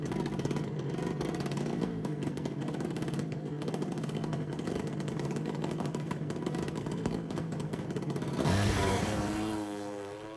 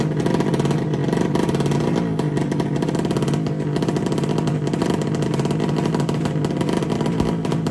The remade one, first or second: first